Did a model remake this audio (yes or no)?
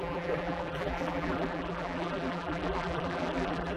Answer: yes